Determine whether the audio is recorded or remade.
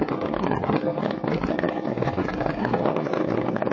remade